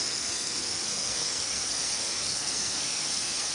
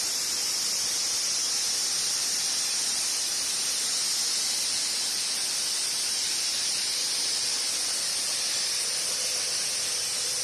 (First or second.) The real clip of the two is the second